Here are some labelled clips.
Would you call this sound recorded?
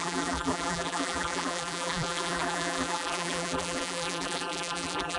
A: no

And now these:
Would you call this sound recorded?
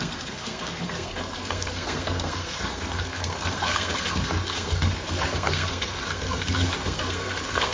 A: no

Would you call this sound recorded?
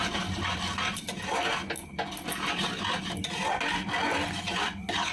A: yes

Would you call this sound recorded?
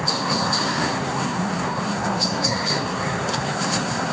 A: no